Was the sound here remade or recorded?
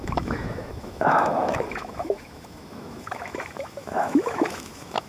remade